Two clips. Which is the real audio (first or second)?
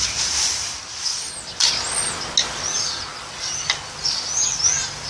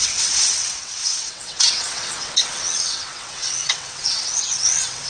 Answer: first